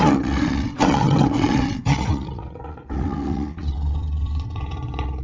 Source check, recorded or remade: remade